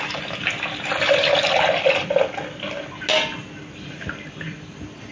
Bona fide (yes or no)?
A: yes